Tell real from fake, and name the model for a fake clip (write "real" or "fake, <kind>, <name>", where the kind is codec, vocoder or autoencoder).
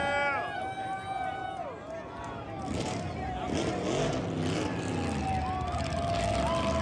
real